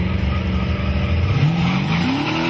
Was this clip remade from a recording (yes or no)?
no